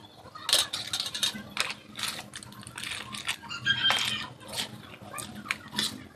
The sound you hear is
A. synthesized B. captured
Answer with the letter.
B